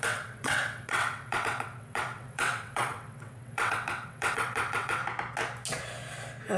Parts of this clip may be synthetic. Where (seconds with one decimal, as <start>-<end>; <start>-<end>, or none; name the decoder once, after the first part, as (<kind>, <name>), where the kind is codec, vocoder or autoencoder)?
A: 0.0-5.0 (vocoder, WaveNeXt)